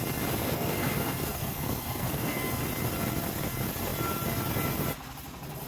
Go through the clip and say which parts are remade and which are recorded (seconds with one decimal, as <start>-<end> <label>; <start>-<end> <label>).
0.0-0.4 recorded; 0.4-2.6 remade; 2.6-5.7 recorded